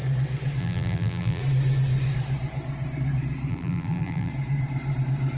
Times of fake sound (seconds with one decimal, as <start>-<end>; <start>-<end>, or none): 0.6-1.4; 3.5-4.3